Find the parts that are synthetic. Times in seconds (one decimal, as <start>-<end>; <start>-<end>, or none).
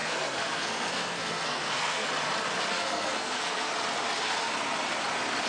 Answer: 0.0-2.1; 2.7-3.7